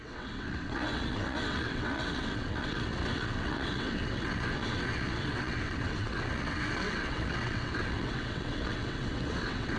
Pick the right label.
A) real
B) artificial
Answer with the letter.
B